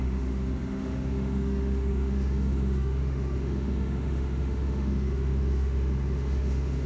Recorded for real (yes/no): no